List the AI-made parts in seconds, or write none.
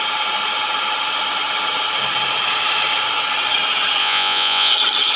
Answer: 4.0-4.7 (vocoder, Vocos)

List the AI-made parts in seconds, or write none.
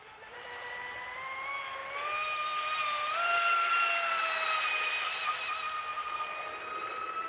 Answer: none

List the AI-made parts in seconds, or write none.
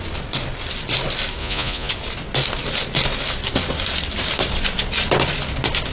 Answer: 1.4-1.9 (vocoder, Vocos)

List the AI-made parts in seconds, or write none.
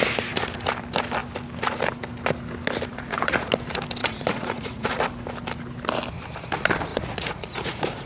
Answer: 2.9-3.5 (vocoder, Vocos); 4.0-5.0; 6.9-8.1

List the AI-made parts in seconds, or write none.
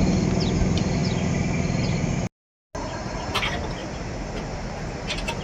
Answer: none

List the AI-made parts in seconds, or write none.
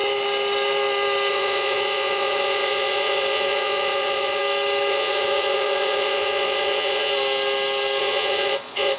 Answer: 1.3-4.4 (vocoder, Vocos); 4.9-7.1; 8.0-9.0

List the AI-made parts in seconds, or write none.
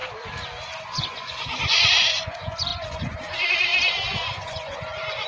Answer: 0.8-5.3 (vocoder, Vocos)